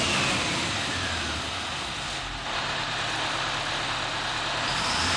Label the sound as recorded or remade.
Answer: recorded